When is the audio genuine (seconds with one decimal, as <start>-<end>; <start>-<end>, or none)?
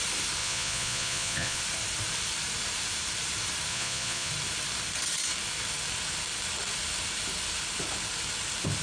0.0-0.4; 1.6-3.7; 4.3-8.8